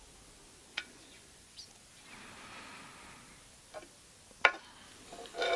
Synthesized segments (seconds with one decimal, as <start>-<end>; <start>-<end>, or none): 0.7-1.7